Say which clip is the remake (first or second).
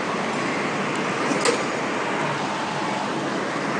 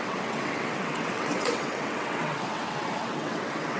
second